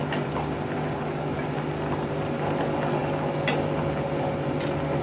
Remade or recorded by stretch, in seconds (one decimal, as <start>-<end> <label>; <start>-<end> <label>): 0.0-5.0 recorded